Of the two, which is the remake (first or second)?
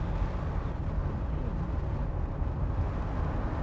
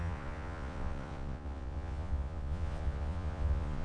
second